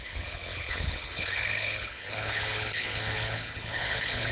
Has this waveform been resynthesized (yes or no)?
yes